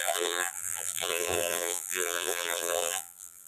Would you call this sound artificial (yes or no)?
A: yes